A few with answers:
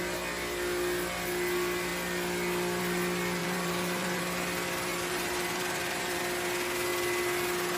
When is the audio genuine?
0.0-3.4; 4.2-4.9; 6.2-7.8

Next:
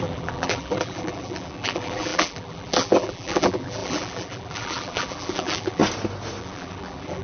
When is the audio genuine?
5.8-6.4

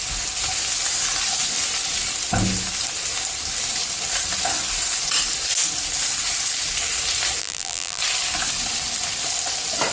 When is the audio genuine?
0.0-7.4; 8.0-9.9

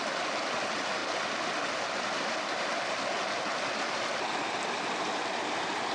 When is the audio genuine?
none

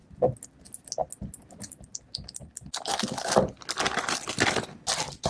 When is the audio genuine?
0.0-0.5; 1.0-4.2

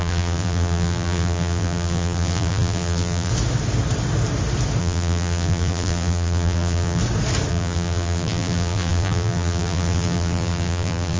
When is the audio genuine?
3.3-4.8; 7.0-7.5

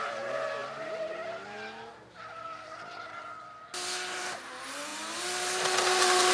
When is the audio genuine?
0.0-6.3

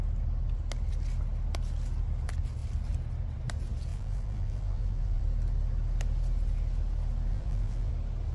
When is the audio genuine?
0.0-3.9; 5.2-7.3; 7.9-8.3